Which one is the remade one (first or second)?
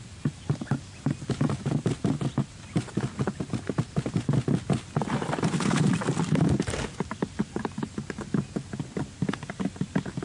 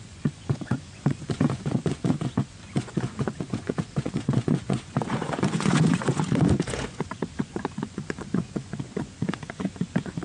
second